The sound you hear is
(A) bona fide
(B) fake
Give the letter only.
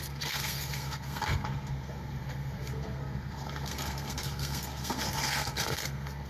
B